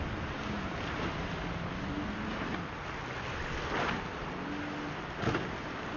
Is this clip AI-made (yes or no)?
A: no